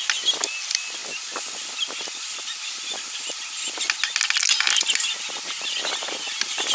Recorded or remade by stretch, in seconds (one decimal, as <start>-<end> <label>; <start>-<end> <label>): 0.0-6.7 recorded